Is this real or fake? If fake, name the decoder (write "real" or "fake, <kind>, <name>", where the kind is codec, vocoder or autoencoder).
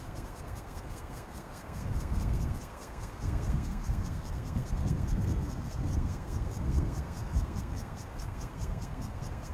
fake, codec, SNAC